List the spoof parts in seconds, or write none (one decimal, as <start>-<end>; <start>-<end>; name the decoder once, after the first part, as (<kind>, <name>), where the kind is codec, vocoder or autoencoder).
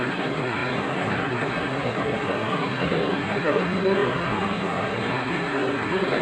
0.0-6.2 (codec, SNAC)